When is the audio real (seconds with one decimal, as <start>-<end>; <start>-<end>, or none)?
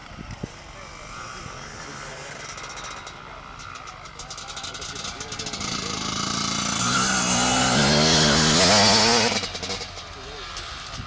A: 0.6-11.1